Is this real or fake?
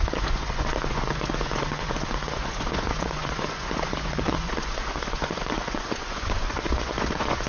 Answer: fake